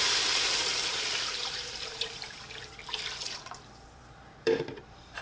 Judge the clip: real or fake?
fake